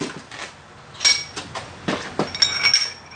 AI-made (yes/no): no